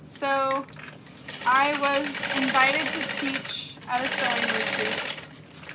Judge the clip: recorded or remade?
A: recorded